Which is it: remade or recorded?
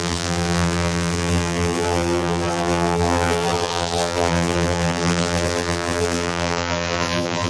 remade